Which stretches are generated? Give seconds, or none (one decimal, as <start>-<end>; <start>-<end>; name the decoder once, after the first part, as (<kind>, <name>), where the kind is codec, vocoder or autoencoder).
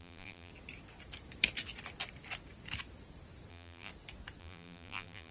0.0-0.5 (vocoder, BigVGAN v2); 3.5-3.9; 4.4-5.3